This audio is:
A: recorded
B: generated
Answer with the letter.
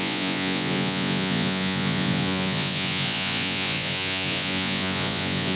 B